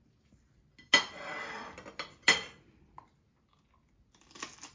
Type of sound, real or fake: real